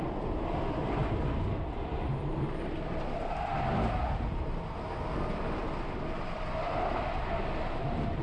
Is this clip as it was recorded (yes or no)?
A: no